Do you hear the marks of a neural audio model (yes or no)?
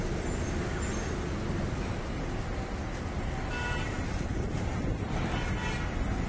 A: no